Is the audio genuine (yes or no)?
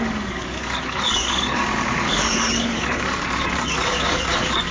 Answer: no